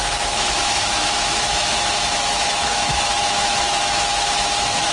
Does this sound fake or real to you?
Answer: fake